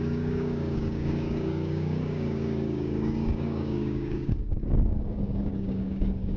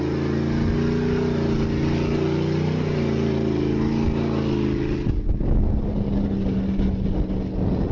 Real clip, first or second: second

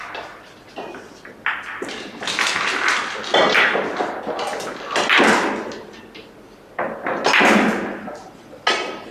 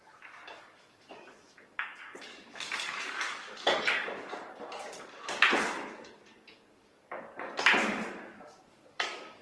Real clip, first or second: first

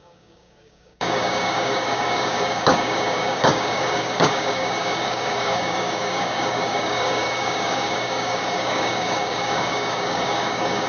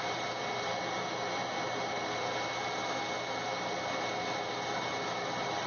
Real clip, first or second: second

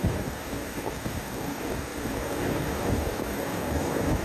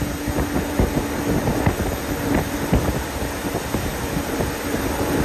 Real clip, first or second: second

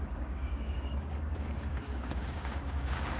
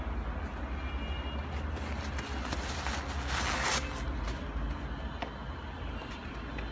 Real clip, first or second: second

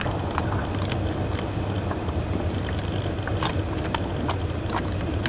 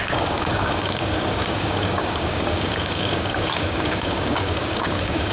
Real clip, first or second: first